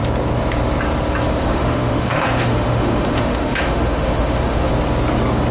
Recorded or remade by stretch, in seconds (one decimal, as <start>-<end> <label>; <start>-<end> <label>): 0.0-1.4 recorded; 1.4-4.7 remade; 4.7-5.5 recorded